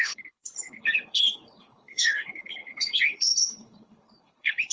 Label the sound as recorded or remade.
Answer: remade